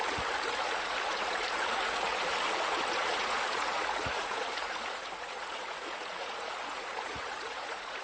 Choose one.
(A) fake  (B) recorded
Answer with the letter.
A